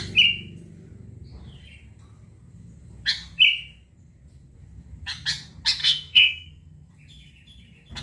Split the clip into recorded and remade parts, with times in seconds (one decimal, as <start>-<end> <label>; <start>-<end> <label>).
0.0-5.8 recorded; 5.8-6.9 remade; 6.9-8.0 recorded